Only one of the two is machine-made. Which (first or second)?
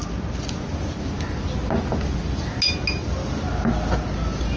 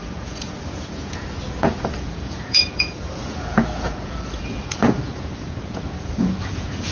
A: second